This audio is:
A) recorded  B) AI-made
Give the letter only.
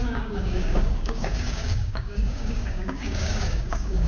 B